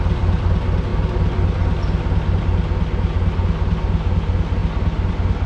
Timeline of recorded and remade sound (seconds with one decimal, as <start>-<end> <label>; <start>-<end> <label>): 0.0-5.5 recorded